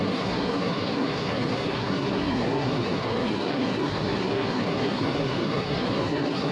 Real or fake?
fake